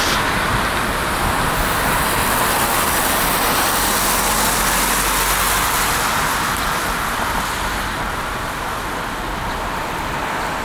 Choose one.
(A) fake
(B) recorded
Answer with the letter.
B